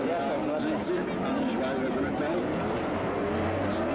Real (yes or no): yes